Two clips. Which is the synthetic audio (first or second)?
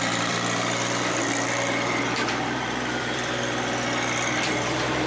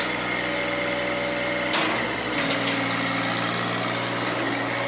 first